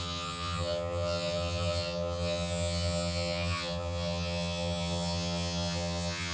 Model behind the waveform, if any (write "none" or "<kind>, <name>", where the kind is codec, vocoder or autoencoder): vocoder, HiFi-GAN